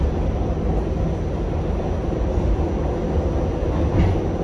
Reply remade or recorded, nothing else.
recorded